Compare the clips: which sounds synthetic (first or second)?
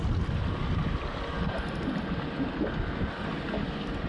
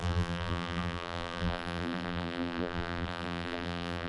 second